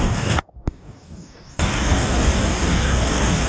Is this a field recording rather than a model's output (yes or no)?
no